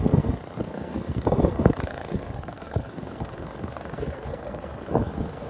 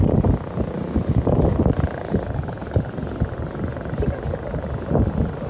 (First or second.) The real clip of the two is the second